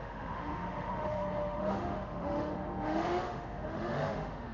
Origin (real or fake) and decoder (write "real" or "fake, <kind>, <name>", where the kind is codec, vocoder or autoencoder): fake, autoencoder, DAC-VAE